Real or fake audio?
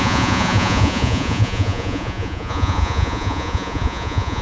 fake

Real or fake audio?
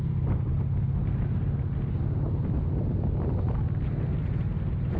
real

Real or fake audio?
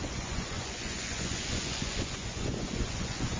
fake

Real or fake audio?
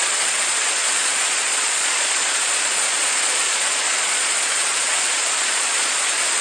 fake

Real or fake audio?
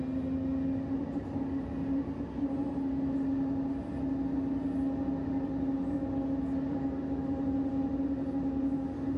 real